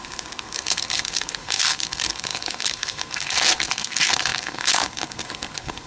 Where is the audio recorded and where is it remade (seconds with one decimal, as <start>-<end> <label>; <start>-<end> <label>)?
0.0-5.9 remade